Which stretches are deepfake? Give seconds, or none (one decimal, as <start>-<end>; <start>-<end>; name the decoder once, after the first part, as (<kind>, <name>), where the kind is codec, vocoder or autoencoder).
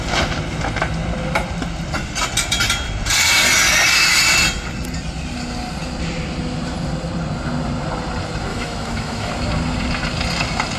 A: 8.5-9.3 (autoencoder, DAC-VAE)